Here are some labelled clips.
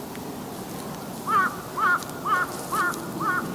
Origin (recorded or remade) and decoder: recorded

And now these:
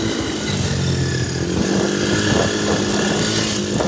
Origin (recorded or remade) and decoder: recorded